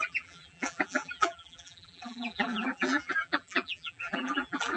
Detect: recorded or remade remade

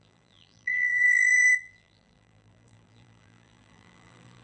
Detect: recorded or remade remade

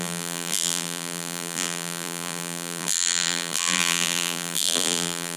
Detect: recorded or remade remade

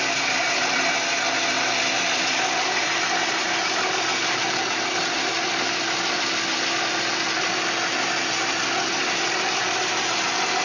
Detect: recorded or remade remade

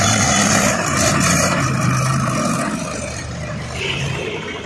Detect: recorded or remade remade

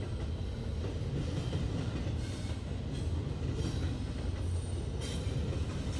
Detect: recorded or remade recorded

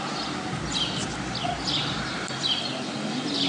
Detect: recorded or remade recorded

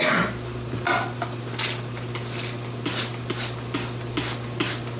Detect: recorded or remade recorded